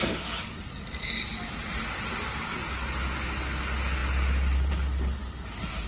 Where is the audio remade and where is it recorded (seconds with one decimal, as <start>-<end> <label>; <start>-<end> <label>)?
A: 0.0-5.9 recorded